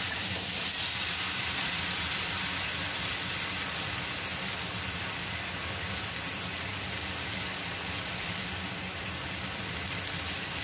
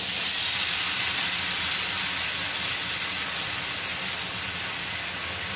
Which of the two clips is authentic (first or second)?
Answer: second